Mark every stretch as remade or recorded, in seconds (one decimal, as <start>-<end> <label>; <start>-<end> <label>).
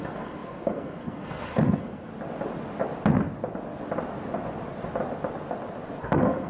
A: 0.0-2.1 remade; 2.1-6.0 recorded; 6.0-6.5 remade